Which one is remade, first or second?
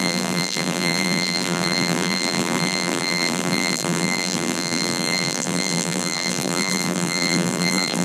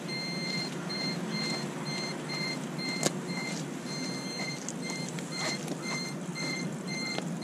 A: first